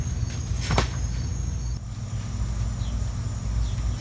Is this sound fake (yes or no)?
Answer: no